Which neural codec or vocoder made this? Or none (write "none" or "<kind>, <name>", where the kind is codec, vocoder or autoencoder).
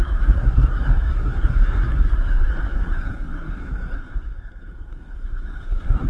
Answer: codec, SNAC